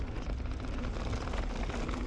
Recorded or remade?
recorded